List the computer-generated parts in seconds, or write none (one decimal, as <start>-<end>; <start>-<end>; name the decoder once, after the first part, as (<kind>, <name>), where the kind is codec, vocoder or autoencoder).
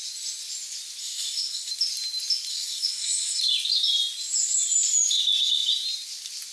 1.0-1.7 (codec, SNAC); 2.5-3.4